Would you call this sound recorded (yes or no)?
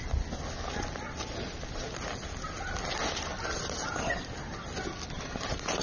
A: yes